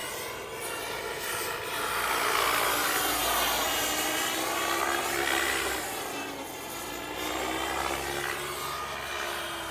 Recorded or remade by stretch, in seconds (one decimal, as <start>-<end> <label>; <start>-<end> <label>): 0.0-9.7 recorded